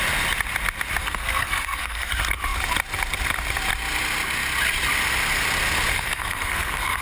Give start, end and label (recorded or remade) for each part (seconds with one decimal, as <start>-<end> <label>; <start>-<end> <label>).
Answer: 0.0-1.0 recorded; 1.0-2.1 remade; 2.1-5.9 recorded; 5.9-7.0 remade